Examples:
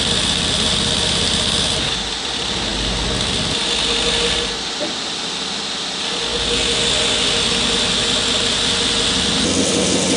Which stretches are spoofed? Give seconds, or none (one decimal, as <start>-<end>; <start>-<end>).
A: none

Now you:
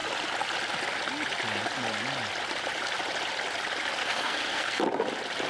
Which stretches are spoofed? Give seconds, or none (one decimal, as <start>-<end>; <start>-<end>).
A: 4.0-4.8

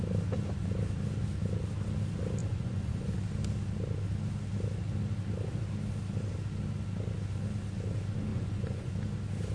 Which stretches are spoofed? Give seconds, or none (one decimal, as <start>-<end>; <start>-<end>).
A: 2.4-3.1; 8.3-8.9